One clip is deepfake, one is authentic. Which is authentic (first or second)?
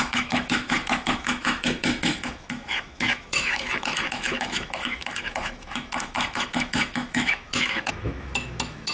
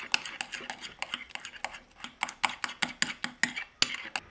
second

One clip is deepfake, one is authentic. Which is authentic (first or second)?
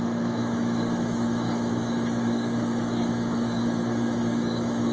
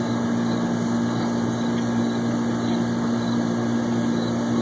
second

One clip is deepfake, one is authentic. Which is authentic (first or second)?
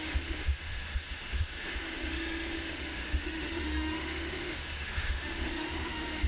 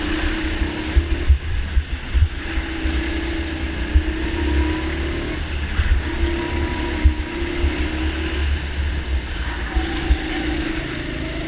second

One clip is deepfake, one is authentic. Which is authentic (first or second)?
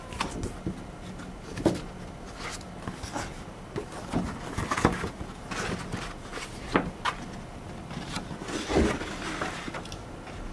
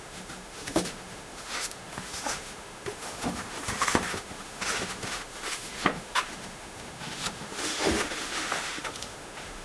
first